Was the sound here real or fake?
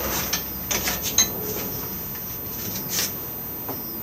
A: real